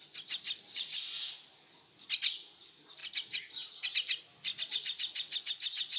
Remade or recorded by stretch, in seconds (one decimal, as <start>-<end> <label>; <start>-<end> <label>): 0.0-6.0 recorded